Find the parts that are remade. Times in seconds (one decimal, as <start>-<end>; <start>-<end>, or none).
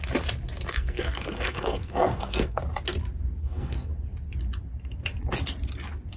0.7-2.6; 3.4-3.9